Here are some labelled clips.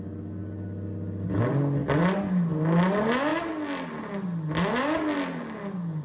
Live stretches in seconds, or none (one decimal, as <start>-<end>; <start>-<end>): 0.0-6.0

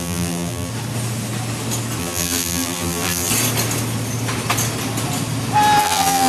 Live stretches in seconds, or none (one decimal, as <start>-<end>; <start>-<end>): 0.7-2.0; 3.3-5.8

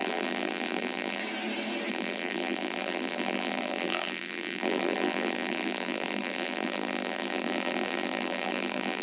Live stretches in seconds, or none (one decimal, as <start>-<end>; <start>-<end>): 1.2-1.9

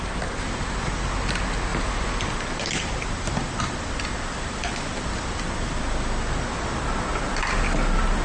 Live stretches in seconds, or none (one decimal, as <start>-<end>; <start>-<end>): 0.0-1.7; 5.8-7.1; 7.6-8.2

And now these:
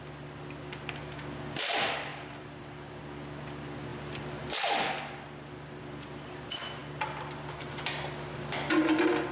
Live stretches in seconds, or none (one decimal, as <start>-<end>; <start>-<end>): 0.0-2.1; 3.0-9.3

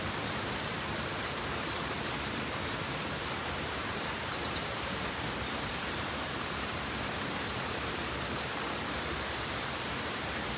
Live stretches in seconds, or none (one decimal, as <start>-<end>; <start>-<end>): 8.5-9.6

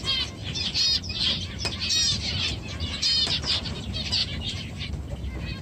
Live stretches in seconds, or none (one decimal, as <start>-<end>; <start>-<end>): 0.0-0.4; 3.8-4.2; 4.9-5.6